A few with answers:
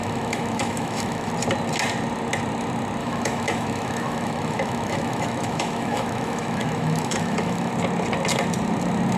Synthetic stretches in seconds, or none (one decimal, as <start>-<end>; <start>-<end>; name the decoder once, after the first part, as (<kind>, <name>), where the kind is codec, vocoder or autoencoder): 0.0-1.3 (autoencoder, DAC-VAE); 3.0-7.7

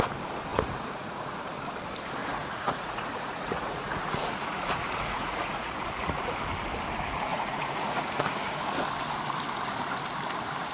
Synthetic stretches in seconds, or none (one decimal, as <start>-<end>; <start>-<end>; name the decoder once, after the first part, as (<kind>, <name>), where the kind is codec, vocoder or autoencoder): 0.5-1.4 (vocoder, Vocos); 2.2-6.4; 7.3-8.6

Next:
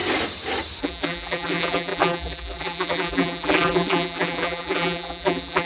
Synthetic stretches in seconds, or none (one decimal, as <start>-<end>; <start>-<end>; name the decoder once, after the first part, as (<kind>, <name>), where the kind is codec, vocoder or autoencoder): 0.8-5.7 (vocoder, BigVGAN v2)